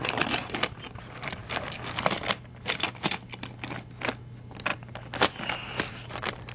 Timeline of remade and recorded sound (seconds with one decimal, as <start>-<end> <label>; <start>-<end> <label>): 0.0-6.5 recorded